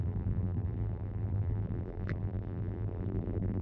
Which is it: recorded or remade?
remade